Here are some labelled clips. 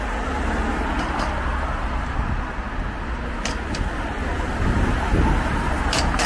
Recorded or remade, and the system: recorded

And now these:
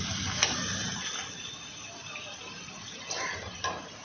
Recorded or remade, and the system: recorded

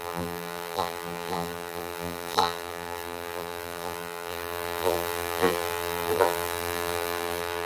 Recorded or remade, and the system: remade, vocoder, BigVGAN v2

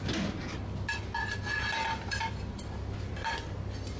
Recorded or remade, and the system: recorded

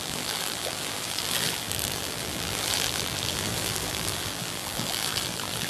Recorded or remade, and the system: remade, vocoder, BigVGAN v2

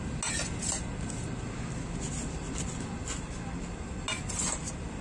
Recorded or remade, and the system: recorded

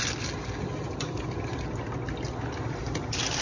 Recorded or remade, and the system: recorded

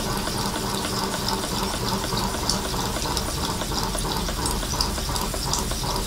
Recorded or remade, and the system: recorded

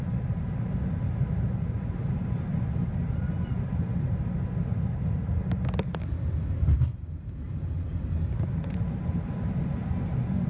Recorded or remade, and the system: recorded